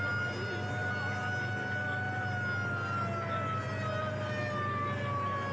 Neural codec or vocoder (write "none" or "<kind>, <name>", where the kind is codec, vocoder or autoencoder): none